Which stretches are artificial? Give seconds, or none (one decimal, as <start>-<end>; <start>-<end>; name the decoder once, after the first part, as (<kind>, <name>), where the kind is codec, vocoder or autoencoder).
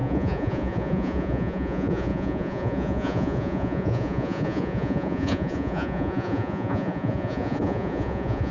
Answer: 0.0-8.5 (vocoder, Vocos)